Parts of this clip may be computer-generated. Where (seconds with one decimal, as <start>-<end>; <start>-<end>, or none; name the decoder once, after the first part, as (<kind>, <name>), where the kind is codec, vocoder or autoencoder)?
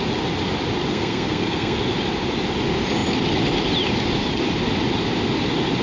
0.9-1.8 (codec, SNAC)